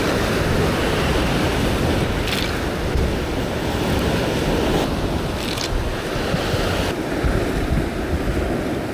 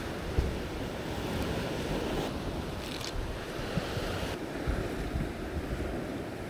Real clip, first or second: first